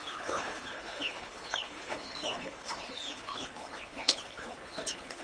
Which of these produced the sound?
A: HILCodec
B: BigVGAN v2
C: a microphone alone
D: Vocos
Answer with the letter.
A